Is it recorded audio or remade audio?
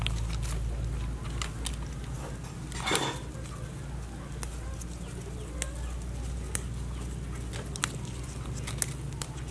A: recorded